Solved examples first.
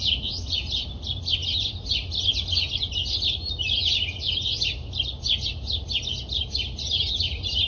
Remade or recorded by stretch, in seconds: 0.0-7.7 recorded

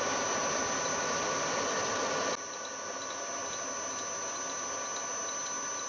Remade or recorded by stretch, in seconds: 0.0-5.9 recorded